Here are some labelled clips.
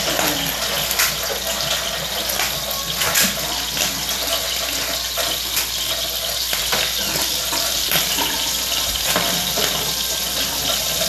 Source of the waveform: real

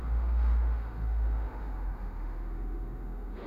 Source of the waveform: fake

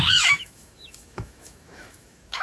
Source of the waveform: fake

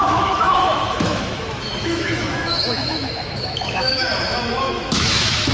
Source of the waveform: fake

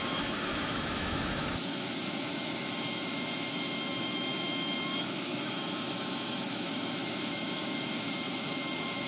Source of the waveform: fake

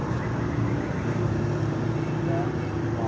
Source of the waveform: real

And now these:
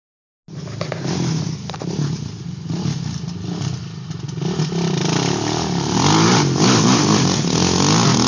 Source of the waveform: real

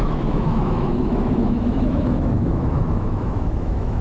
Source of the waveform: fake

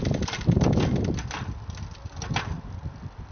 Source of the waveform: real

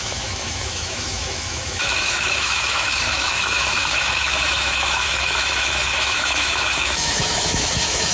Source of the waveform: fake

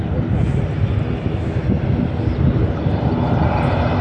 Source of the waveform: real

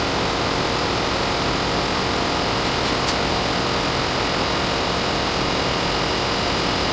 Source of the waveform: real